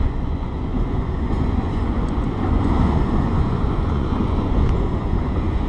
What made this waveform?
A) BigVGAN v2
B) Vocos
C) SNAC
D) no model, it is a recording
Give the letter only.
B